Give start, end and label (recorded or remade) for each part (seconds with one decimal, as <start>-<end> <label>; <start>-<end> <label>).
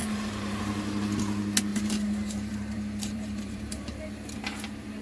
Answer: 0.0-1.7 recorded; 1.7-4.1 remade; 4.1-5.0 recorded